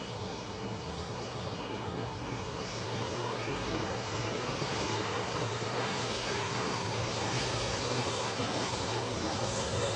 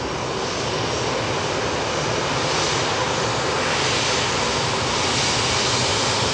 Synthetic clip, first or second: first